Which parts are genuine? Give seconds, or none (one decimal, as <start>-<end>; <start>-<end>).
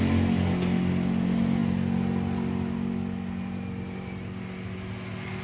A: 0.0-5.4